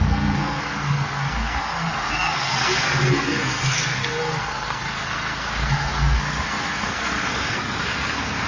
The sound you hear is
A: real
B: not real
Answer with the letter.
B